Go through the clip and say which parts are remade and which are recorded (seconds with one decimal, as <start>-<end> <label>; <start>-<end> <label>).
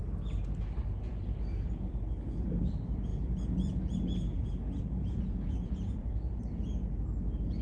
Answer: 0.0-3.1 recorded; 3.1-6.4 remade; 6.4-7.6 recorded